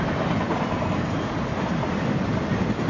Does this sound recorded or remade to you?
remade